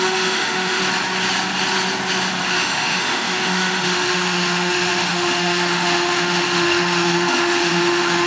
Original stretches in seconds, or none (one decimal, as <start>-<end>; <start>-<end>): 0.8-2.5